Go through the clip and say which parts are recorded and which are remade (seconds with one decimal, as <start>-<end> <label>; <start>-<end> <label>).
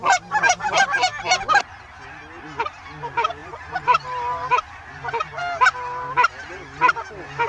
0.0-3.4 recorded; 3.4-4.5 remade; 4.5-7.5 recorded